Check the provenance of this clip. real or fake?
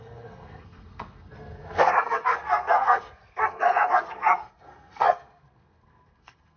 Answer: fake